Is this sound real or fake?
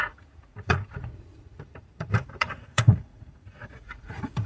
fake